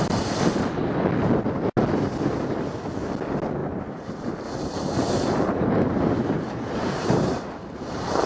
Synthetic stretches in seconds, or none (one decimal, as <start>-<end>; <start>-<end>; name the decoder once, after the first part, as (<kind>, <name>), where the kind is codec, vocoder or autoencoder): 3.6-7.4 (vocoder, BigVGAN v2)